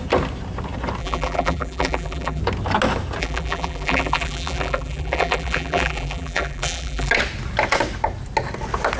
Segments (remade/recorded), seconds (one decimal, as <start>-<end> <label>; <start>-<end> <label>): 0.0-1.0 recorded; 1.0-2.4 remade; 2.4-3.2 recorded; 3.2-7.1 remade; 7.1-9.0 recorded